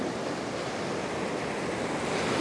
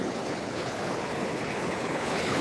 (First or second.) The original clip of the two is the first